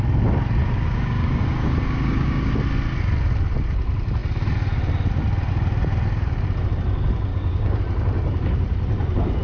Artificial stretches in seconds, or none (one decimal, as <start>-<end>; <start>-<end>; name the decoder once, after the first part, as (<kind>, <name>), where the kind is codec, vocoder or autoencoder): 0.6-2.5 (codec, DAC); 7.3-7.8